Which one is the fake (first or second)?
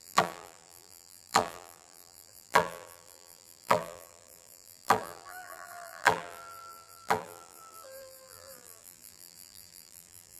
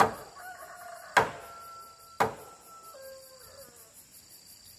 first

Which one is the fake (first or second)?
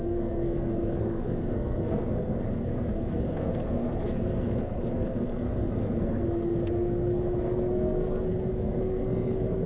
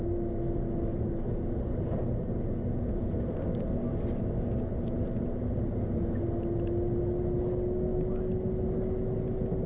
first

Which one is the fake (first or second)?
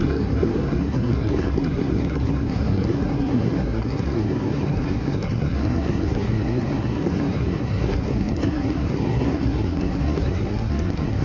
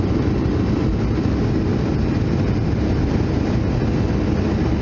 first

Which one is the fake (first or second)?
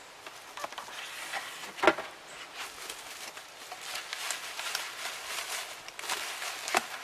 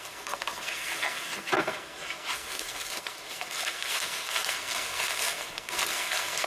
second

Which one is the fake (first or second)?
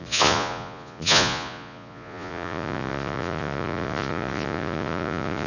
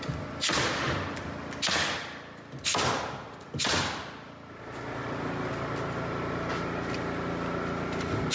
first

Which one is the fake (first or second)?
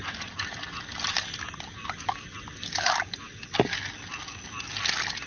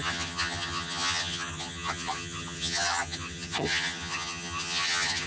second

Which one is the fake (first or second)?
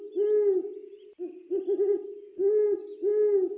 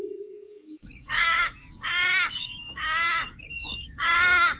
second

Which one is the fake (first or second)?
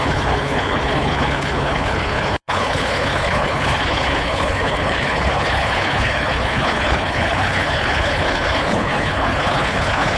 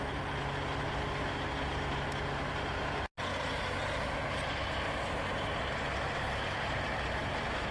first